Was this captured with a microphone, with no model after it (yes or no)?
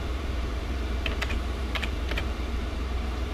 no